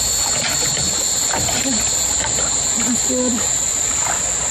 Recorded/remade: recorded